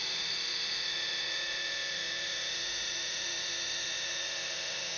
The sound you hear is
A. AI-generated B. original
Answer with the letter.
A